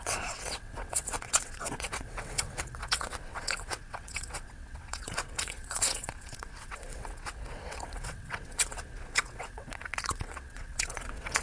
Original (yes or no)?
no